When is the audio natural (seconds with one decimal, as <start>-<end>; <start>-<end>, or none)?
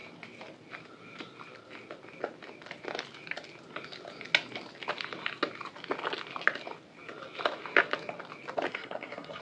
0.0-8.7